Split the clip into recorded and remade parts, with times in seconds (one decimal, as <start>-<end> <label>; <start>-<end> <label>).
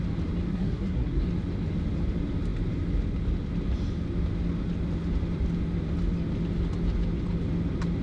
0.0-0.5 recorded; 0.5-1.2 remade; 1.2-8.0 recorded